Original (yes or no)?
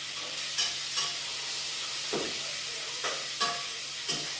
yes